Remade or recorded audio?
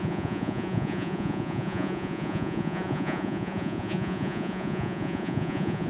remade